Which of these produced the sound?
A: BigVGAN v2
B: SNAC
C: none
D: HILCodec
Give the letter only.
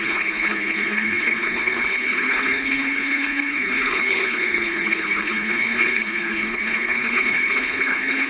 D